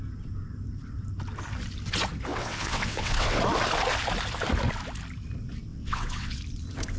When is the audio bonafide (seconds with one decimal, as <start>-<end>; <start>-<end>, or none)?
0.0-2.3; 3.4-5.7; 6.4-7.0